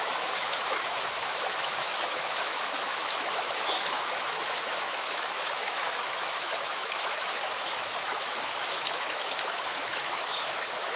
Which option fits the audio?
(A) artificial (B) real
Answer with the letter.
A